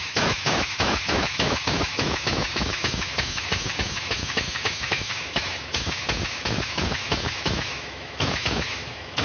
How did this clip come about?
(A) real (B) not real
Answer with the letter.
B